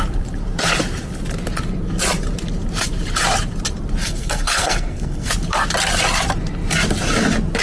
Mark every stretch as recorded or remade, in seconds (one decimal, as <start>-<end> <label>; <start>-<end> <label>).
0.0-4.0 recorded; 4.0-5.3 remade; 5.3-7.6 recorded